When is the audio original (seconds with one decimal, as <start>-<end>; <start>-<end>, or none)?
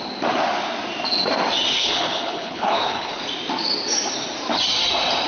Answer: 0.0-1.8; 3.2-5.3